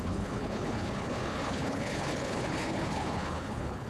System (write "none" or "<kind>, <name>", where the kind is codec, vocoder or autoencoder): codec, HILCodec